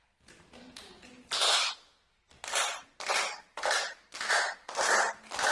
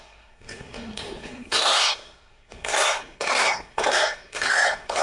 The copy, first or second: second